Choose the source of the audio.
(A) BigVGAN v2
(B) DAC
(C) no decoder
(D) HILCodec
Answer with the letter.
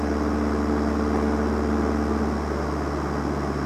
C